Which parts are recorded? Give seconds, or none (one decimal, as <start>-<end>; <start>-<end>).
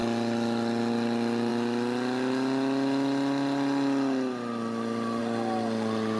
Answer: 0.0-6.2